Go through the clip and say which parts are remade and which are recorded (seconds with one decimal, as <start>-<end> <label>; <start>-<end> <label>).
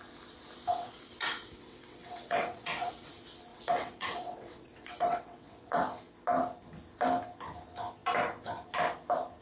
0.0-0.7 recorded; 0.7-3.1 remade; 3.1-3.5 recorded; 3.5-5.8 remade; 5.8-9.4 recorded